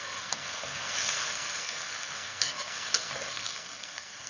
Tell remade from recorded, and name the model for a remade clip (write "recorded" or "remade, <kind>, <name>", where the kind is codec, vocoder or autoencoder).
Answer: remade, codec, SNAC